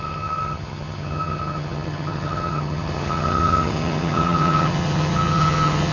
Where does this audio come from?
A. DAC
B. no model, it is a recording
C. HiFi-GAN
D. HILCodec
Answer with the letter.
C